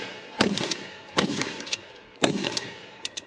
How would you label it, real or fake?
fake